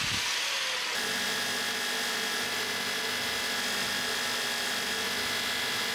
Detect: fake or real real